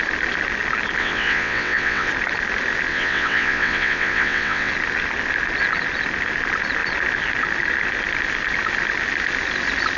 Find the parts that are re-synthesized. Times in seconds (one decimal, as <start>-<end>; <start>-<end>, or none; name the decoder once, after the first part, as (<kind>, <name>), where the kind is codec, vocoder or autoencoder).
1.0-2.1 (vocoder, WaveNeXt); 2.9-4.7